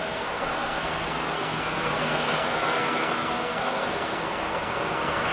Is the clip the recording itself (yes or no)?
no